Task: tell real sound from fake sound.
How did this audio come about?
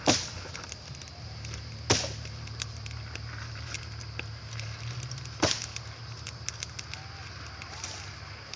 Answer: real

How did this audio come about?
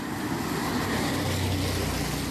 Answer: real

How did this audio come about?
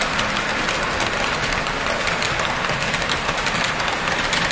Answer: real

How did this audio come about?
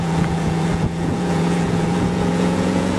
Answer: fake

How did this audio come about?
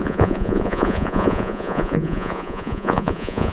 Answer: fake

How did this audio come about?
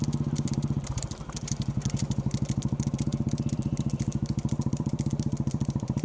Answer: fake